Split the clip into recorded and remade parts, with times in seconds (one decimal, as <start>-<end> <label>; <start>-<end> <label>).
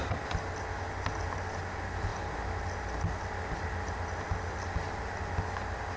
0.0-6.0 recorded